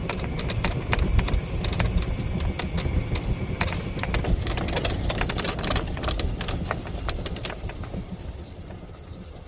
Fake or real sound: real